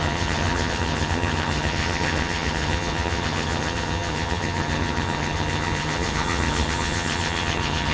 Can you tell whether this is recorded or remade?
remade